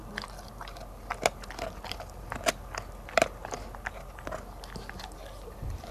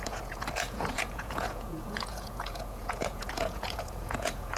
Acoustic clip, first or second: first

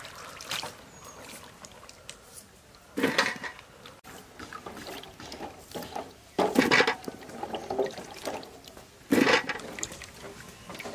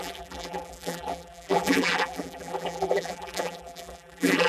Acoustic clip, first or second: first